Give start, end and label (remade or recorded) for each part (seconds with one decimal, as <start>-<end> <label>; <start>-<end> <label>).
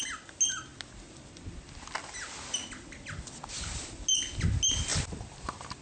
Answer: 0.0-5.8 recorded